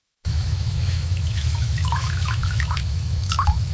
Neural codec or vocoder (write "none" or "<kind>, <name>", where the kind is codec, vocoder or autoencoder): autoencoder, DAC-VAE